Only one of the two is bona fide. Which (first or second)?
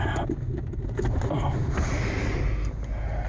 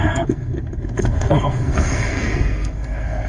first